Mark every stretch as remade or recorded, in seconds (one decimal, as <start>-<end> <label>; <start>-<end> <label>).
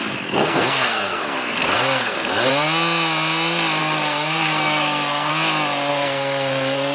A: 0.0-2.5 remade; 2.5-3.8 recorded; 3.8-5.3 remade; 5.3-5.9 recorded; 5.9-6.9 remade